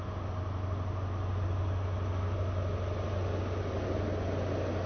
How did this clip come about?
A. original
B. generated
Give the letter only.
A